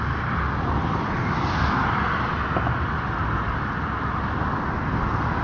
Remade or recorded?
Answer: recorded